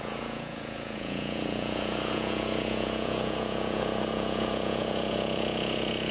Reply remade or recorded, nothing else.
remade